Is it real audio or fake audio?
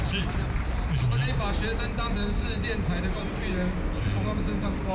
real